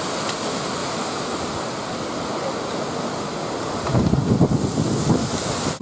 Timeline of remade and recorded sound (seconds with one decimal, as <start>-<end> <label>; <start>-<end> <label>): 0.0-5.8 recorded